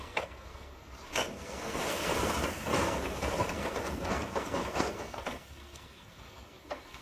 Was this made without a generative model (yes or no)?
no